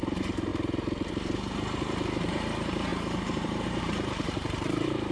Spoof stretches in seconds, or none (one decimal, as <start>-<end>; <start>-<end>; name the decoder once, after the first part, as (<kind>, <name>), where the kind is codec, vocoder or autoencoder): 0.0-0.5 (vocoder, BigVGAN v2); 1.1-5.1